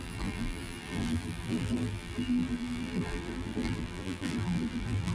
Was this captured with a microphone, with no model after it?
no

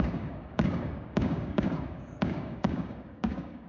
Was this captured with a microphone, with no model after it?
no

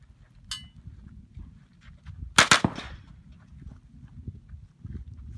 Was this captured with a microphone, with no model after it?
yes